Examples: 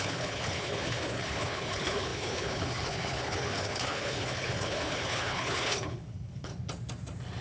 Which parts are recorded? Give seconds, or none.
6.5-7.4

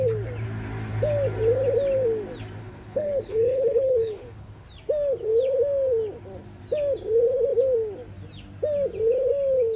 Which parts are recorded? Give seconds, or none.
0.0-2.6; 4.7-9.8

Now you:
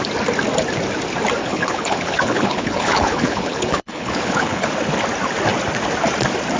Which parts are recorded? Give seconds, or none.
0.0-1.4; 4.7-6.6

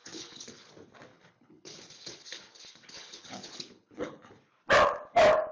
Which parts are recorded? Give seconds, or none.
0.7-1.1; 4.3-5.5